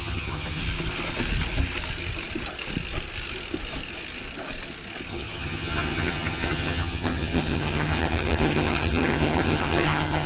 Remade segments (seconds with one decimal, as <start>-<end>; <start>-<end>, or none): 0.0-0.6; 5.1-10.3